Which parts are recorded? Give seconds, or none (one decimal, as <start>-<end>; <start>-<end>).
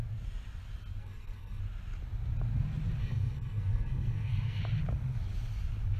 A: 0.0-1.0; 1.6-3.0; 4.6-6.0